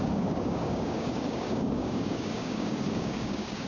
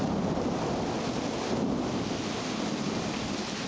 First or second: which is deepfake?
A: first